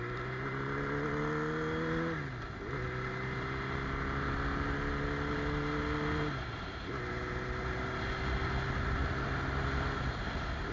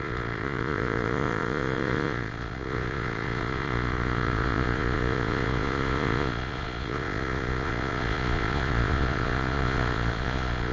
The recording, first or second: first